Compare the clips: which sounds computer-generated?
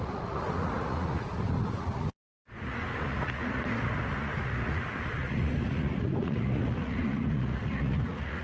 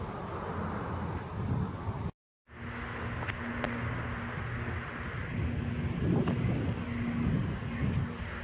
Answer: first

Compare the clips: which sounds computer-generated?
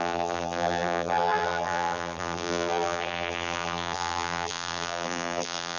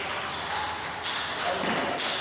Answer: first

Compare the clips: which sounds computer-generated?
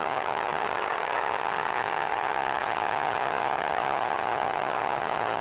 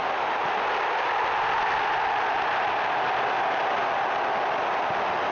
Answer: first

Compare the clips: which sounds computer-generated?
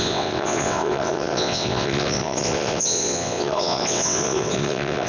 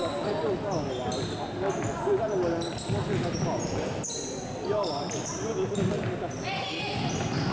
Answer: first